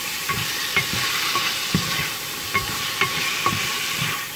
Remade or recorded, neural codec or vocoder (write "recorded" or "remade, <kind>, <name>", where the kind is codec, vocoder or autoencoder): remade, vocoder, BigVGAN v2